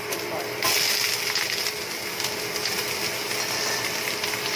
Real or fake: real